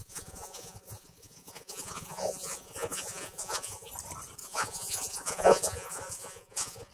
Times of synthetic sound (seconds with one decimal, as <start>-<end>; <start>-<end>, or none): 0.0-3.9; 4.4-6.9